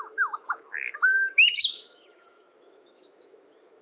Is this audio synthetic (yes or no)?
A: yes